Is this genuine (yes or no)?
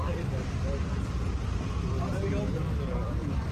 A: yes